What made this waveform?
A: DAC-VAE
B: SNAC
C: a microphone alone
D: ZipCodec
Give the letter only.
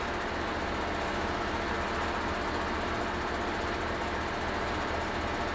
C